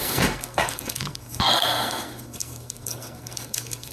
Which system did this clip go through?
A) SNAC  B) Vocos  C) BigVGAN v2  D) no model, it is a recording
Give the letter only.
A